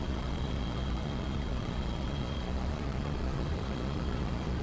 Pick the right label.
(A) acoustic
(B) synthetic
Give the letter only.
B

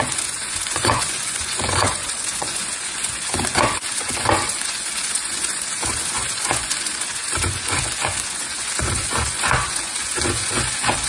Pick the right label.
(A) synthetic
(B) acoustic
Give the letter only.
A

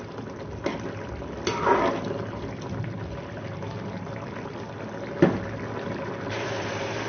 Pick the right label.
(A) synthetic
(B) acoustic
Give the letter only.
B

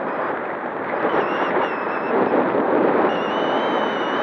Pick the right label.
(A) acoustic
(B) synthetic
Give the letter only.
A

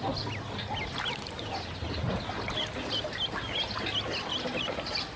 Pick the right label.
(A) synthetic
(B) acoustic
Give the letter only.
B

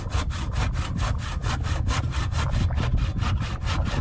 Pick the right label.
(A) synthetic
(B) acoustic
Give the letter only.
B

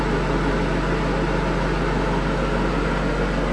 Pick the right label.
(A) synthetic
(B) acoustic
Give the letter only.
B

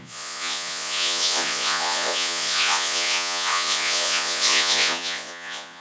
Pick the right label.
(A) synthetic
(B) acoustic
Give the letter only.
A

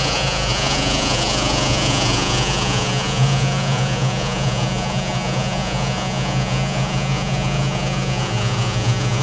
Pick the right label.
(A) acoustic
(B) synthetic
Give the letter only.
B